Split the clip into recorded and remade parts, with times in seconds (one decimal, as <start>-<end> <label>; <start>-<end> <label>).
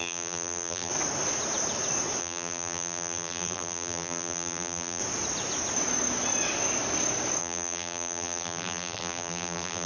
0.0-0.9 remade; 0.9-2.2 recorded; 2.2-5.0 remade; 5.0-7.4 recorded; 7.4-9.9 remade